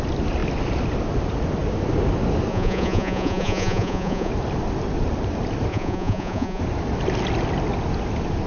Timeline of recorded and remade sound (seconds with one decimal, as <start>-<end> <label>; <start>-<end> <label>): 0.0-2.5 recorded; 2.5-4.3 remade; 4.3-5.7 recorded; 5.7-6.6 remade; 6.6-8.5 recorded